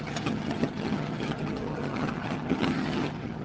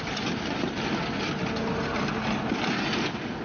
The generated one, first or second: first